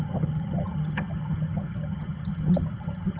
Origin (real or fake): fake